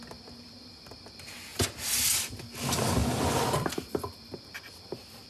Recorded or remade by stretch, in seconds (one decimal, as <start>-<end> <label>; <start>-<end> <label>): 0.0-5.3 recorded